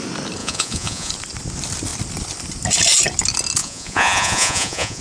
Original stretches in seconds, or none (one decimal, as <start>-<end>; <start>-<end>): 0.0-0.4; 1.1-3.6